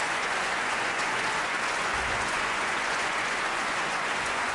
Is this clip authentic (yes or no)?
no